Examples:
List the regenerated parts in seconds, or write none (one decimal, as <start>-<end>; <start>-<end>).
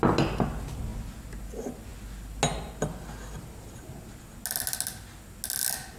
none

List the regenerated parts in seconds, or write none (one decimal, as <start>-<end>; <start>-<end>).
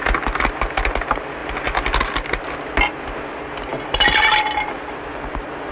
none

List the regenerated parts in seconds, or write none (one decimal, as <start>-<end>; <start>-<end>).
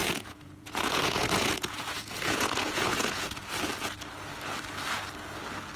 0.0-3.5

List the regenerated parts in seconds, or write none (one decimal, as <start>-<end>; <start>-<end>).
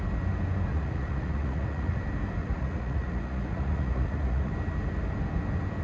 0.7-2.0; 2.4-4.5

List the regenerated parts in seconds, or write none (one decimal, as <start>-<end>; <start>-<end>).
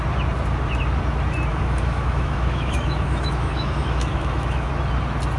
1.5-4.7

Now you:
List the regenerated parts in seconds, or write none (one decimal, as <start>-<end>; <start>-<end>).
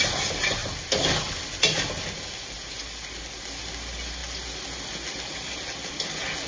none